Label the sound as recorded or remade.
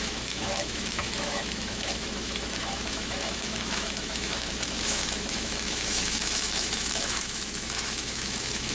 remade